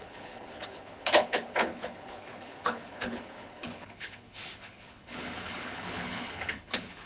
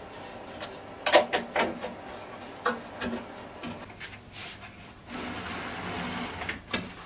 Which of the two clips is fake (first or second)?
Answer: first